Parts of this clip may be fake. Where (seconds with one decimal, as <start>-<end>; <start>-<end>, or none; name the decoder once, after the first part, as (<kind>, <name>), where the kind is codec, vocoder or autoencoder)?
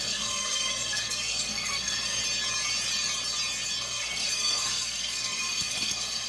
0.0-2.2 (codec, SNAC); 3.8-6.3